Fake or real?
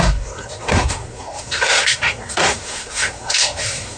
fake